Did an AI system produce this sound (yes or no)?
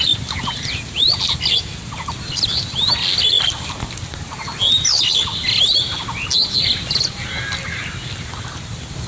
no